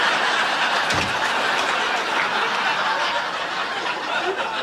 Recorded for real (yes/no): yes